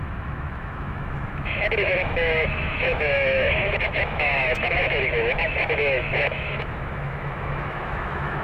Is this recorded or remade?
remade